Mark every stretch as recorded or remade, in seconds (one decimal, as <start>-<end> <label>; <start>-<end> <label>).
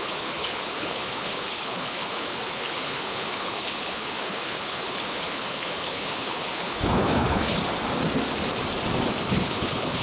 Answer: 0.0-7.6 remade; 7.6-9.3 recorded; 9.3-10.0 remade